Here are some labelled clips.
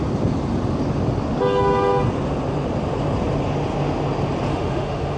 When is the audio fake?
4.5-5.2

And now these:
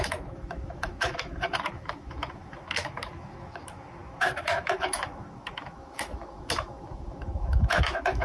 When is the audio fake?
0.0-8.2

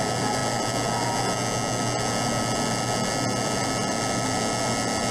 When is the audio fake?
none

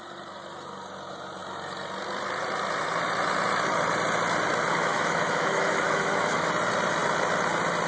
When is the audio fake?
4.8-6.5